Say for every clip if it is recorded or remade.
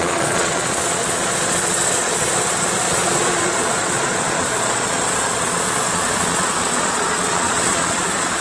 remade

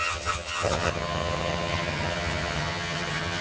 remade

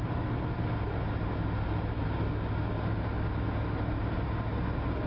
recorded